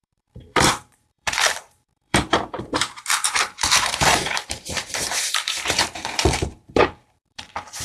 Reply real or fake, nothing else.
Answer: fake